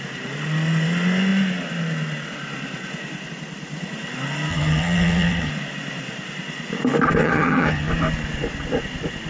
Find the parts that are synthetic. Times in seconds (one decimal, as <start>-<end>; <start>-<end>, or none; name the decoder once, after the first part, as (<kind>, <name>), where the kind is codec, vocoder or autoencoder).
4.5-5.5 (vocoder, HiFi-GAN); 7.2-7.9